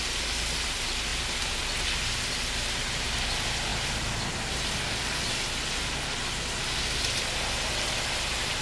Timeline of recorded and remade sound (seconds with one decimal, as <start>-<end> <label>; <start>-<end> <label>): 0.0-8.6 recorded